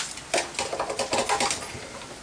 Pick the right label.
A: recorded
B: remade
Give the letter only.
A